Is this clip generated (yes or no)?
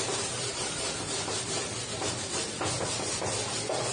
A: no